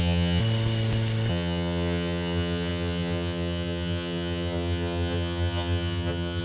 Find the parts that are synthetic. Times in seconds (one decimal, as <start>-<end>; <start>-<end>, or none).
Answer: 0.0-0.4; 1.3-6.4